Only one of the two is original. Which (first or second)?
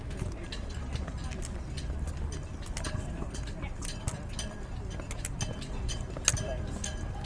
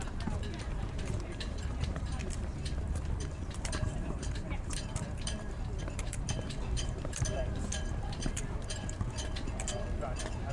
first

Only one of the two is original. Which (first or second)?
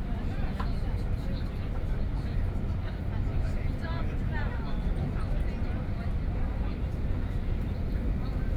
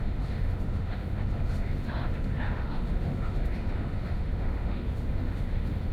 first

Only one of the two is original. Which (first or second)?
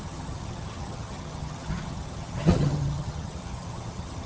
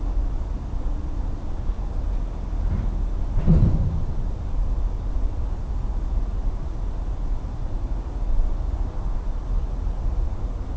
second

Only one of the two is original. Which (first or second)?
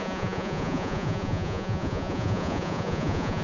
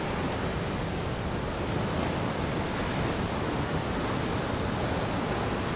second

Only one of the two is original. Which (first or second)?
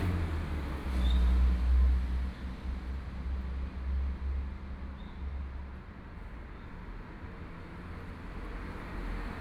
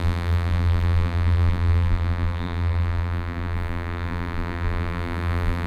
first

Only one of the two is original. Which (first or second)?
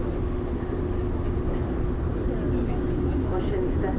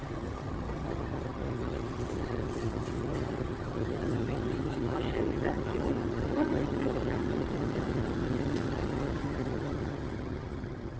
first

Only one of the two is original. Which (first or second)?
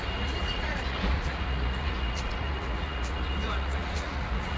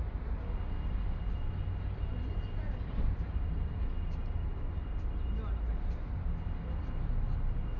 second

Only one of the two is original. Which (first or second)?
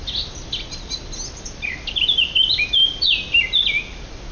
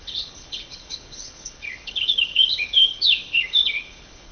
first